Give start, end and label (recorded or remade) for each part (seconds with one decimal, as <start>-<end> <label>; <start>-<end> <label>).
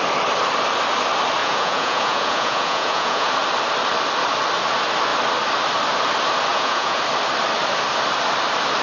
0.0-1.4 recorded; 1.4-3.3 remade; 3.3-6.5 recorded; 6.5-7.0 remade; 7.0-8.8 recorded